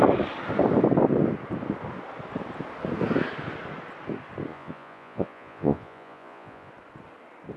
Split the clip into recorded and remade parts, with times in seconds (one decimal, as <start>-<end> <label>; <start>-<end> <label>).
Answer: 0.0-4.5 recorded; 4.5-6.7 remade; 6.7-7.6 recorded